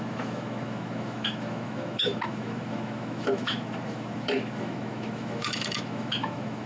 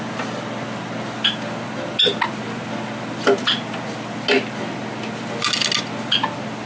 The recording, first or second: second